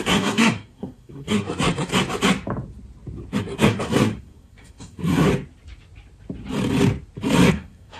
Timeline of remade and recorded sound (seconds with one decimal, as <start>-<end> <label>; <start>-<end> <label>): 0.0-1.9 remade; 1.9-3.4 recorded; 3.4-5.3 remade; 5.3-7.5 recorded; 7.5-8.0 remade